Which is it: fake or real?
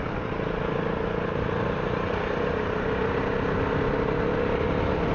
real